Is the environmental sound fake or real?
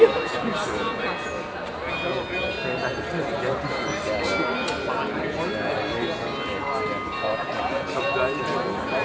real